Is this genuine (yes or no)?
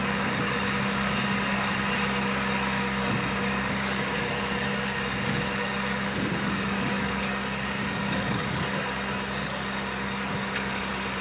no